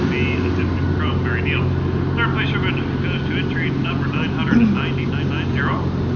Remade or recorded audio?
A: recorded